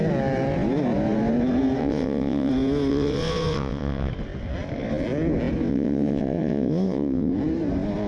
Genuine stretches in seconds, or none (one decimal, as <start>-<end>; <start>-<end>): 0.0-1.8; 2.5-2.9; 4.1-5.7; 7.3-8.1